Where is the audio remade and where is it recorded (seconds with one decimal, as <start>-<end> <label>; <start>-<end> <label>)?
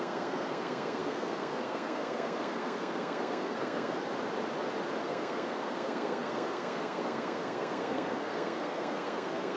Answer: 0.0-4.1 remade; 4.1-5.0 recorded; 5.0-9.6 remade